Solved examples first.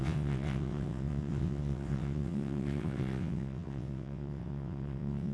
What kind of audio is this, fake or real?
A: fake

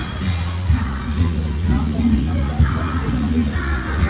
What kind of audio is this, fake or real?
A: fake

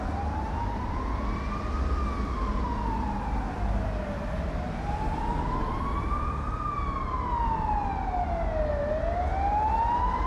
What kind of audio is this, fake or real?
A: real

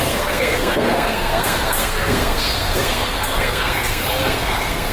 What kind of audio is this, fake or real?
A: fake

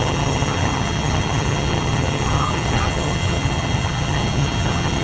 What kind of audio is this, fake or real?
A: fake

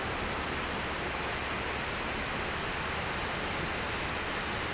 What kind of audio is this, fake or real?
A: real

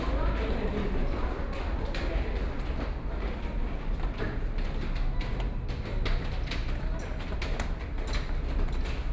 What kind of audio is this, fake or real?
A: real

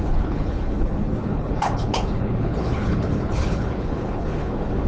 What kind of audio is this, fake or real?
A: fake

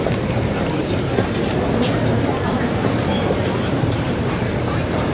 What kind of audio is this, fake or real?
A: fake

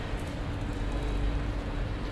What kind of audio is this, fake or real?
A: real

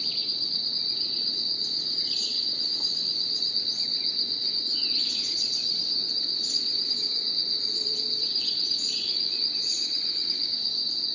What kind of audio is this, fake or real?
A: fake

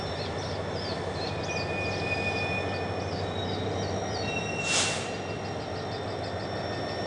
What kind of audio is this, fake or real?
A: real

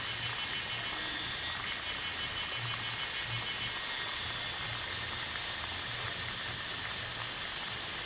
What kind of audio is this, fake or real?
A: real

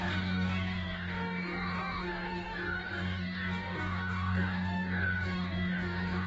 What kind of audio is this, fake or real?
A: fake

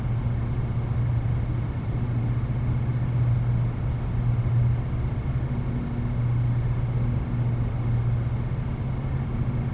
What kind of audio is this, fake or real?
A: real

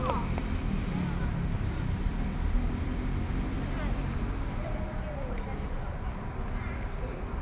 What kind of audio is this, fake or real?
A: real